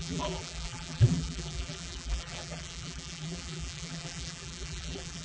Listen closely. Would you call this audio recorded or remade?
remade